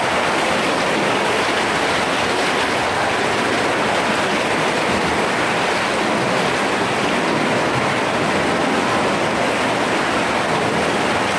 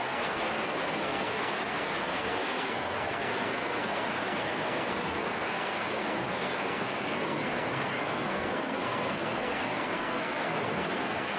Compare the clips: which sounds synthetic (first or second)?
second